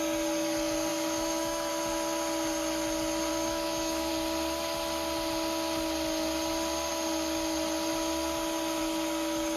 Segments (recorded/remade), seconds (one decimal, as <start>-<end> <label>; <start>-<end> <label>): 0.0-0.9 recorded; 0.9-1.7 remade; 1.7-3.3 recorded; 3.3-4.1 remade; 4.1-9.6 recorded